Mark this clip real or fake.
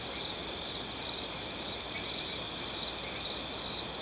real